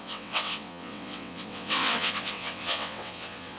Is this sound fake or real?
fake